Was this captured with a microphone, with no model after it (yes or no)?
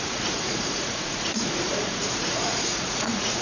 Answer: no